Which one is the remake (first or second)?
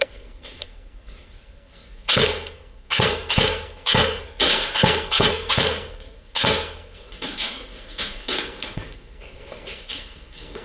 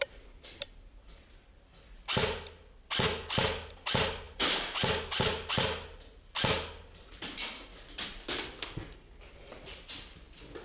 first